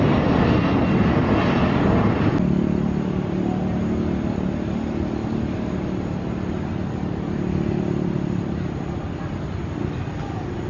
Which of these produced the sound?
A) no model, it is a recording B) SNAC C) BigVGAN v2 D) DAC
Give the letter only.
A